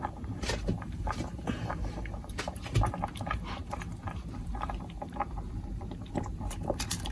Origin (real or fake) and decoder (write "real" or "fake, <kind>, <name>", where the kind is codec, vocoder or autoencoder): fake, vocoder, BigVGAN v2